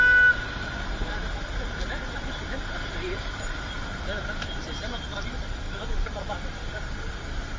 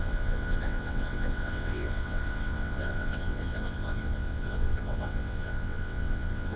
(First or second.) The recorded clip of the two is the first